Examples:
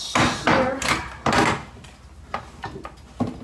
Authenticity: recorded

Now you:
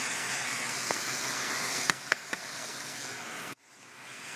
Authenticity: remade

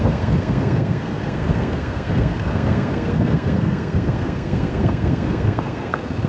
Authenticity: remade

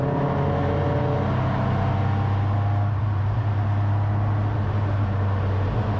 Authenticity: recorded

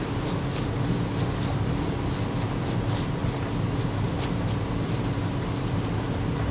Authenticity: recorded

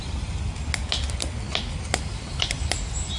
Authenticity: recorded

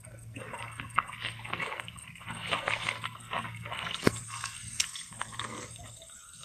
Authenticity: remade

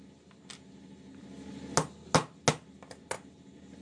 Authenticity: recorded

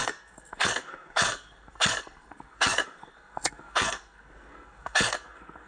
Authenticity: remade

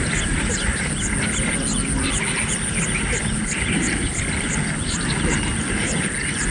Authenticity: recorded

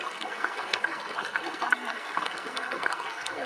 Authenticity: remade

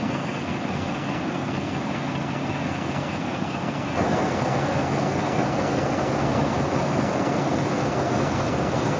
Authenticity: remade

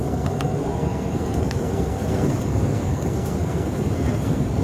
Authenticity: remade